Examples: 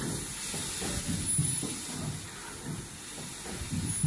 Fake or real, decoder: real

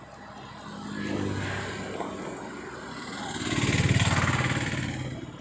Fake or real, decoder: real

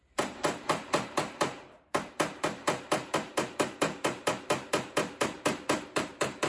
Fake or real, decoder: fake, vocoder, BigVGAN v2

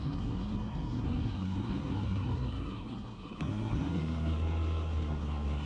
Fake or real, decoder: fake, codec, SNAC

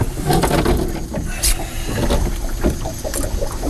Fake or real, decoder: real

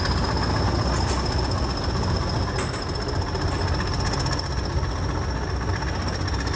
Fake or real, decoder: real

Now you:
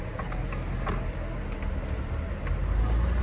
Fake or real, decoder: real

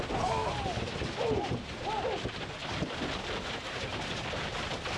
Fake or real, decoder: real